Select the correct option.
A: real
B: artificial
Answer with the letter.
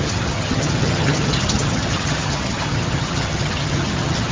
B